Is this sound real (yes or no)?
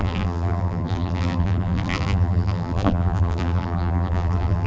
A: no